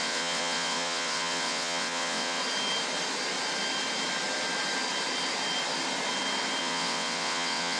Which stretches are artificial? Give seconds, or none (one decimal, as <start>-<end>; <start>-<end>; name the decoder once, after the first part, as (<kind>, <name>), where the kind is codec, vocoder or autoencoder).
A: 0.0-2.4 (vocoder, WaveNeXt); 6.6-7.8